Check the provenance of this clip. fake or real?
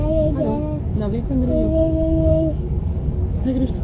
fake